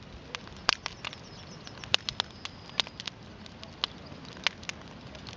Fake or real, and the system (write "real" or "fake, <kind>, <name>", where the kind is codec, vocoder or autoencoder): real